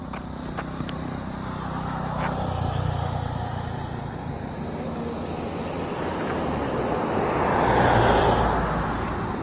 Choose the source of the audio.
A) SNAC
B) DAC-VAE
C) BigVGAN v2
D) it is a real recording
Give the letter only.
D